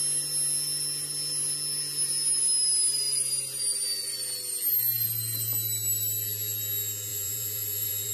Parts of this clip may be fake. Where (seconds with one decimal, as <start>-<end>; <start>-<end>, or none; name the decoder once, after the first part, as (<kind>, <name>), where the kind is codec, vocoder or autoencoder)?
7.1-8.1 (vocoder, Vocos)